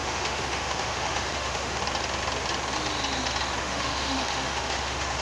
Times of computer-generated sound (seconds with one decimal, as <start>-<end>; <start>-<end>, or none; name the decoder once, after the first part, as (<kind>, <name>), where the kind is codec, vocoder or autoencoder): 0.0-1.8 (autoencoder, DAC-VAE); 3.6-5.2